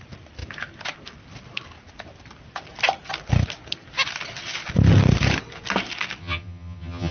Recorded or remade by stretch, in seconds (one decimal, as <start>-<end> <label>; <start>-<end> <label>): 0.0-6.2 recorded; 6.2-7.1 remade